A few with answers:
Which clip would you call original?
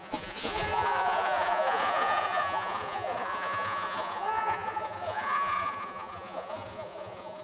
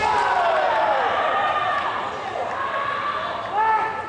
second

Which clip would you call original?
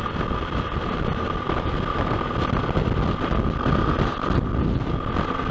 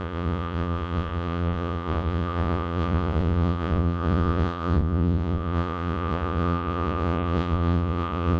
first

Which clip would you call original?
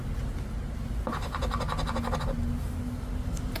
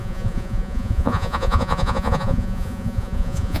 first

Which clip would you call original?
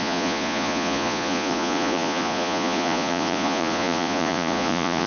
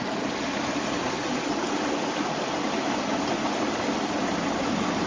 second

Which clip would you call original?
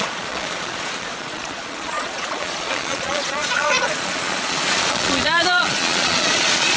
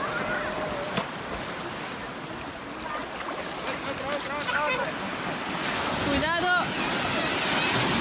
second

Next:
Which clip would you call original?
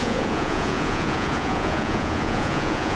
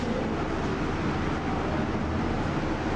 second